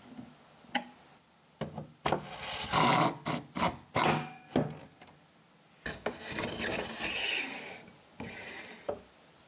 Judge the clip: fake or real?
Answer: real